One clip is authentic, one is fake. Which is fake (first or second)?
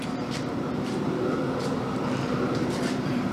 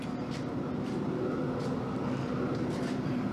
first